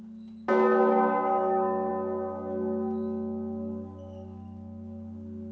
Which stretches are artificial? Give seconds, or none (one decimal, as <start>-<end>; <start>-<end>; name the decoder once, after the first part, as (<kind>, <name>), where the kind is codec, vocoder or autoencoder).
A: 0.7-1.9 (autoencoder, DAC-VAE)